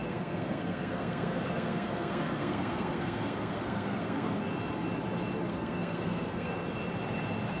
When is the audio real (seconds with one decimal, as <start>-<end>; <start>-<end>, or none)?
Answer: 4.5-5.5; 6.5-7.6